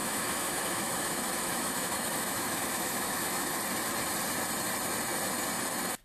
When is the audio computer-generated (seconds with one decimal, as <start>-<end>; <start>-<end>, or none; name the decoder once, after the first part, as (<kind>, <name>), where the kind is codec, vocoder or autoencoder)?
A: 0.0-3.6 (autoencoder, DAC-VAE)